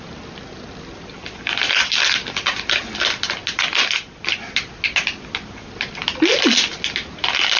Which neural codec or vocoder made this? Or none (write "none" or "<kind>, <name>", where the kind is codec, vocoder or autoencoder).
none